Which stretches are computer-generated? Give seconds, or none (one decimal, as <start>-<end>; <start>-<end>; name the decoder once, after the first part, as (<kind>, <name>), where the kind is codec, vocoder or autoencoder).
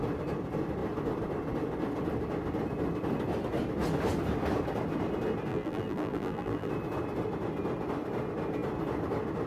5.5-6.7 (vocoder, BigVGAN v2)